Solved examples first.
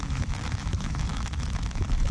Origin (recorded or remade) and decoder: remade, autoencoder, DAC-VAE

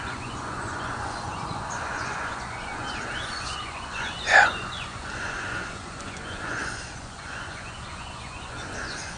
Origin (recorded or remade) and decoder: remade, vocoder, Vocos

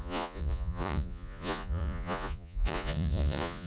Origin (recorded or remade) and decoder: remade, vocoder, Vocos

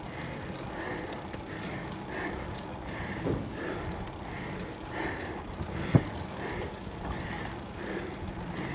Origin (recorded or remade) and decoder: recorded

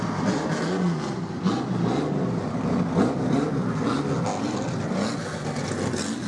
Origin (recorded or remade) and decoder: recorded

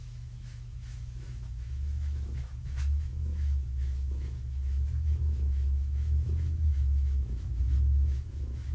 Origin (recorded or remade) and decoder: remade, autoencoder, DAC-VAE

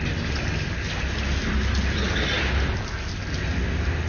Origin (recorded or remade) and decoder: recorded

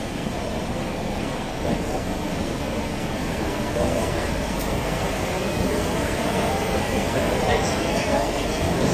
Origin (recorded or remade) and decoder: remade, codec, SNAC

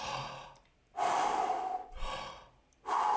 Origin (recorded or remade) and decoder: recorded